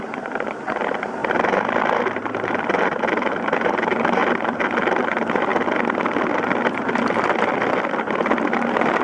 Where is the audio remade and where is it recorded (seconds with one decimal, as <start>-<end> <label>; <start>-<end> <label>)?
0.0-4.2 remade; 4.2-5.0 recorded; 5.0-5.5 remade; 5.5-7.9 recorded; 7.9-9.0 remade